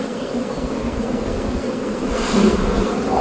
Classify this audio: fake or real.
fake